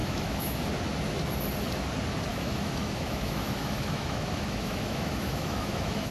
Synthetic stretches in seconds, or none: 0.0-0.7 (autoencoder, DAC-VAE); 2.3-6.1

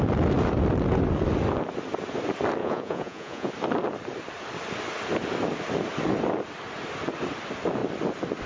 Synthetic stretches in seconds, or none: 2.6-3.5 (vocoder, Vocos)

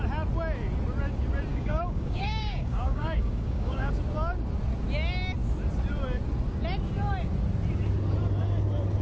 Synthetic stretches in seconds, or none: 1.5-3.9 (codec, DAC)

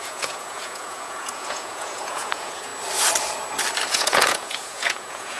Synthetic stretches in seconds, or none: 0.0-2.7 (vocoder, Vocos); 3.9-5.4

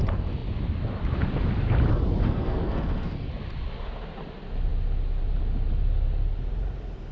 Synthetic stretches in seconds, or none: 2.2-3.3 (codec, SNAC)